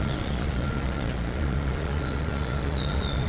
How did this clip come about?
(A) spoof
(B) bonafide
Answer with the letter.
A